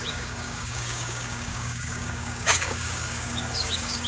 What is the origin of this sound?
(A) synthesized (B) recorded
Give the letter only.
A